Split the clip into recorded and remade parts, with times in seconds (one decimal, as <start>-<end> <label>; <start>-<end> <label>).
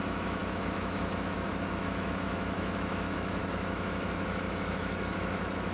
0.0-5.7 remade